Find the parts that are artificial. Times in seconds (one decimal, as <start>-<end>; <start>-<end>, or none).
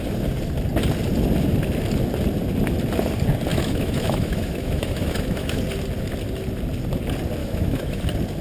3.5-5.6; 7.4-8.0